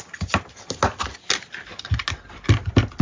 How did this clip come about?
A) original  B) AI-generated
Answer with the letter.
A